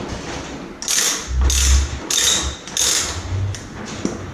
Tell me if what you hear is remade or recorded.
recorded